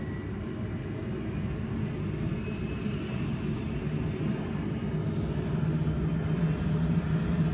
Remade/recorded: recorded